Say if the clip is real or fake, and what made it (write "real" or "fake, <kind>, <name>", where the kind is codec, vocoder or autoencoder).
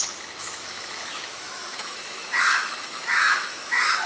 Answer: fake, autoencoder, DAC-VAE